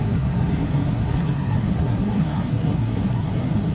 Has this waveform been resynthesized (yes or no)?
yes